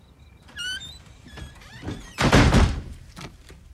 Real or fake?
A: fake